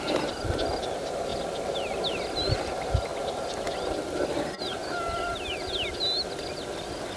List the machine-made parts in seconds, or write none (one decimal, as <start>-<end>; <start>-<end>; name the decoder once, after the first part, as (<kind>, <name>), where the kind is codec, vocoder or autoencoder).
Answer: none